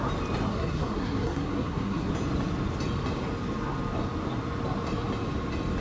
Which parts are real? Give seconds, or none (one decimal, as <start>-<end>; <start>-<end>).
0.0-0.5; 2.1-5.8